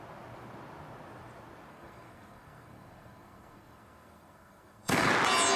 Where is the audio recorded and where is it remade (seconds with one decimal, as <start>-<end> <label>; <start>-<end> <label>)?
0.0-1.7 recorded; 1.7-5.1 remade; 5.1-5.6 recorded